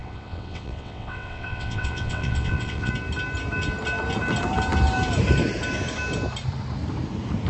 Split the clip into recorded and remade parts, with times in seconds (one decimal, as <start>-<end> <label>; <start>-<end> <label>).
0.0-2.9 remade; 2.9-7.5 recorded